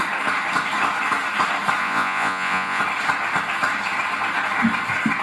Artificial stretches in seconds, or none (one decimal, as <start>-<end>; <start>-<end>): 1.8-2.8